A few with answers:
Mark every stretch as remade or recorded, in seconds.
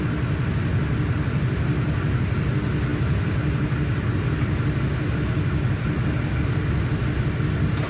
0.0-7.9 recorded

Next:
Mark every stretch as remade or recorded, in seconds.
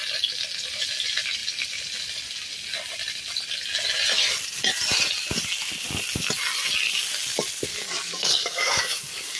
0.0-7.7 recorded; 7.7-9.4 remade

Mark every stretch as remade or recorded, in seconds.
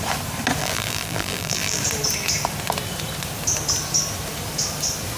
0.0-0.6 recorded; 0.6-1.8 remade; 1.8-5.2 recorded